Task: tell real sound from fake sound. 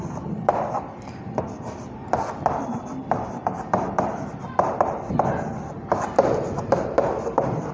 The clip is fake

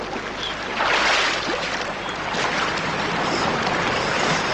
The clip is fake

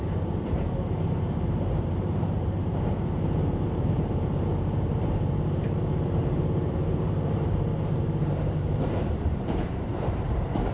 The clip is fake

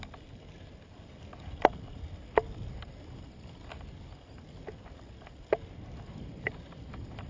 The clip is real